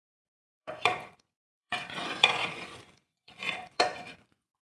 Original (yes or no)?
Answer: no